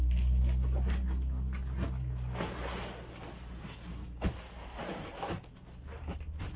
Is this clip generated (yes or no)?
no